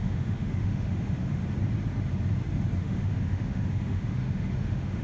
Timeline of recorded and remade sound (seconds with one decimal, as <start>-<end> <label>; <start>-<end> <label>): 0.0-1.4 remade; 1.4-2.8 recorded; 2.8-5.0 remade